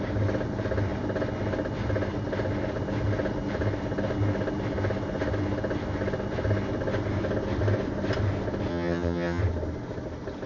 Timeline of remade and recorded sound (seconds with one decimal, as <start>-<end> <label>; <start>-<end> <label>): 0.0-8.7 recorded; 8.7-9.4 remade; 9.4-10.5 recorded